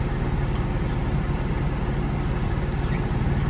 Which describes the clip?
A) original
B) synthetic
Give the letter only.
A